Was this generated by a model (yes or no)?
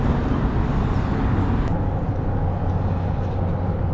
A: no